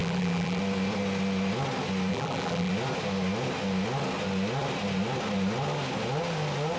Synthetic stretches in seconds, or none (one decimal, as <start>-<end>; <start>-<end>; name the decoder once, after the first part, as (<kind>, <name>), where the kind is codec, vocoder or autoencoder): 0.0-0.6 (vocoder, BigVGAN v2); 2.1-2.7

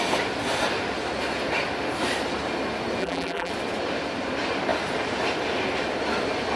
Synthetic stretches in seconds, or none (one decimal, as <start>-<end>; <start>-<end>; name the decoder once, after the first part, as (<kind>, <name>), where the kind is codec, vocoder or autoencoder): 3.0-3.5 (vocoder, BigVGAN v2)

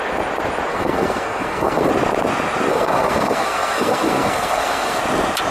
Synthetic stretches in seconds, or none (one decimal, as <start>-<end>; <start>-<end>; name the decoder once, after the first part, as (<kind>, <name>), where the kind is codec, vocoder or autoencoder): 0.7-1.9 (codec, SNAC); 2.7-5.0